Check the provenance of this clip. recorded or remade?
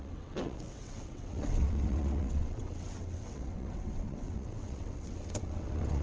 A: remade